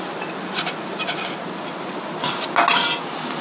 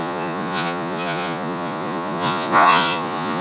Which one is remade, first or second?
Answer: second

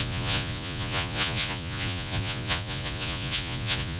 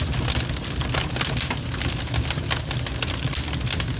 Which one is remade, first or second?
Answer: first